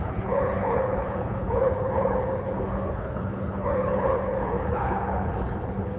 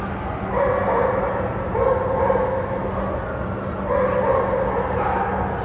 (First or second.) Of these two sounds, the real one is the second